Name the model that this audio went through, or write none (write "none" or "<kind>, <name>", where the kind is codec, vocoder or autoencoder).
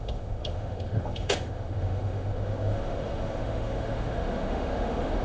autoencoder, DAC-VAE